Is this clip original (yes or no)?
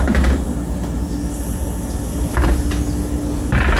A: yes